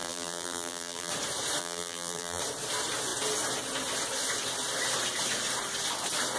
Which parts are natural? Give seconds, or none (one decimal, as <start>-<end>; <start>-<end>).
1.1-1.6; 2.4-6.4